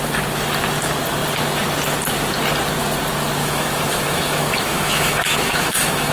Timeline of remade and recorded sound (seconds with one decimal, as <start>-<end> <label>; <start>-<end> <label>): 0.0-3.4 recorded; 3.4-6.1 remade